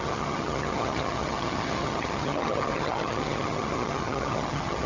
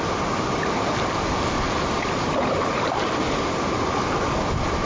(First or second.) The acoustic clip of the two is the second